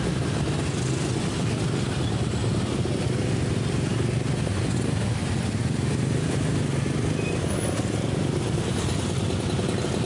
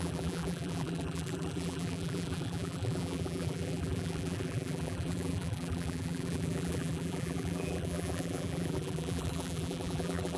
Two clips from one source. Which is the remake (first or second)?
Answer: second